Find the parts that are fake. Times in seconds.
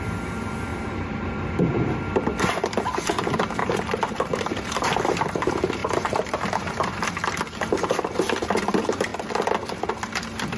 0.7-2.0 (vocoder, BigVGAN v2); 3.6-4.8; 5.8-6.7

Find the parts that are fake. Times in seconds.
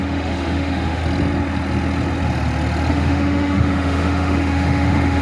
0.0-1.0 (autoencoder, DAC-VAE); 2.9-5.2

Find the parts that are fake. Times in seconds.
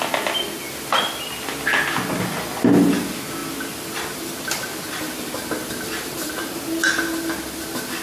3.4-4.2 (vocoder, BigVGAN v2)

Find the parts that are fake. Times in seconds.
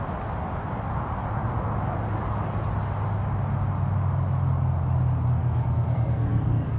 5.4-6.8 (codec, SNAC)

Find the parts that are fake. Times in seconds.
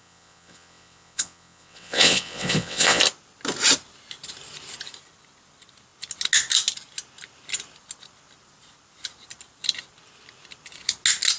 0.0-3.0 (vocoder, WaveNeXt)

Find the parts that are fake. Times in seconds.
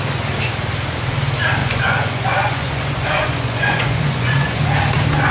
1.6-4.6 (vocoder, Vocos)